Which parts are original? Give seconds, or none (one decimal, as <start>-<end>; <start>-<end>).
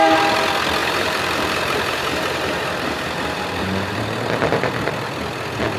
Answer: 0.0-0.8; 4.0-5.8